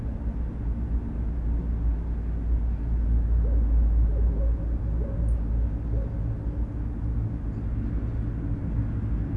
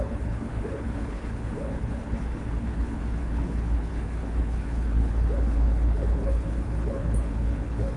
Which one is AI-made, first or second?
second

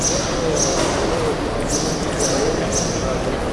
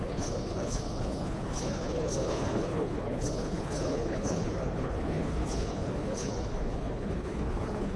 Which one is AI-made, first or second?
second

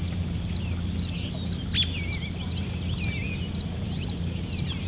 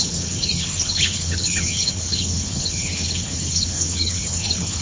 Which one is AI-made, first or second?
second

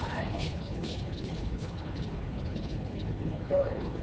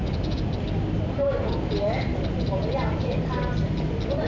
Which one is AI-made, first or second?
first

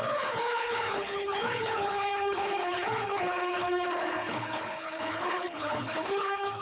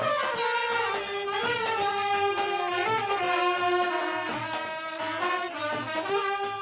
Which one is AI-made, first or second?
first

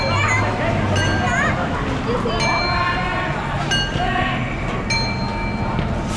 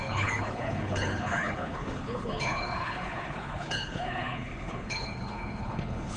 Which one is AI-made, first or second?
second